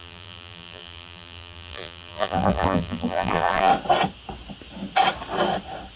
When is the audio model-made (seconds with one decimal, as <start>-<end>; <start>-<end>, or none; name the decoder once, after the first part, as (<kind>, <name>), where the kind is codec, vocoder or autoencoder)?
0.0-3.7 (vocoder, BigVGAN v2)